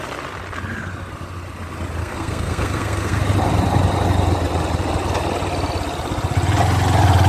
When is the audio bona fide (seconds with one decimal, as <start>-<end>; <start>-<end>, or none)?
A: 0.0-2.0; 3.2-7.3